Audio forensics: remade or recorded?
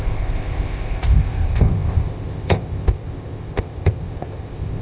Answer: remade